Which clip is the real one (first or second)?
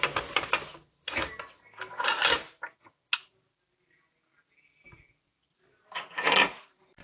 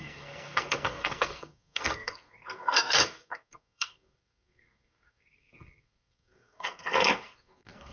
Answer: first